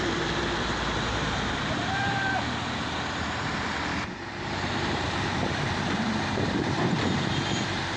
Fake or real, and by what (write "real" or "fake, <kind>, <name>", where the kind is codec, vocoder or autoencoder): fake, vocoder, BigVGAN v2